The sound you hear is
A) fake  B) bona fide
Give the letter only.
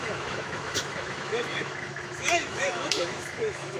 A